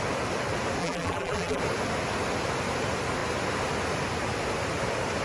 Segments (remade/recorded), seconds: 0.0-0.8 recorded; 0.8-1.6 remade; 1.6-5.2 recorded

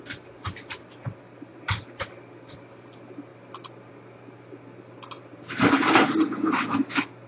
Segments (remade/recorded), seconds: 0.0-1.5 recorded; 1.5-2.1 remade; 2.1-5.2 recorded; 5.2-5.9 remade; 5.9-7.3 recorded

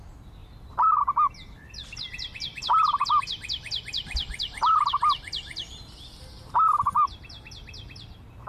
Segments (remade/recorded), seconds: 0.0-0.4 recorded; 0.4-1.0 remade; 1.0-8.5 recorded

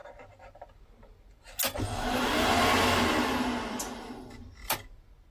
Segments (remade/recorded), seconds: 0.0-5.3 recorded

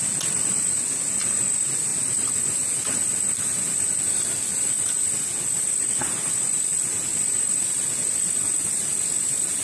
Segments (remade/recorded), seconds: 0.0-9.6 recorded

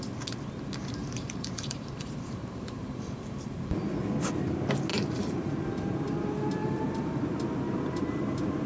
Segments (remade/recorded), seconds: 0.0-1.0 recorded; 1.0-3.8 remade; 3.8-4.9 recorded; 4.9-5.5 remade; 5.5-6.6 recorded; 6.6-7.2 remade; 7.2-8.7 recorded

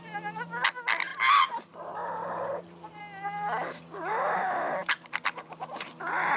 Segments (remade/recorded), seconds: 0.0-2.0 recorded; 2.0-3.0 remade; 3.0-4.1 recorded; 4.1-5.9 remade; 5.9-6.4 recorded